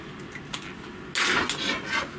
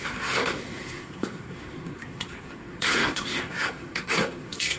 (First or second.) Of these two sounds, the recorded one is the first